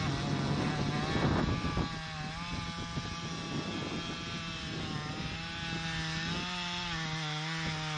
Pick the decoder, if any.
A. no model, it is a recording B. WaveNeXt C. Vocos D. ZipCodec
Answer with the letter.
A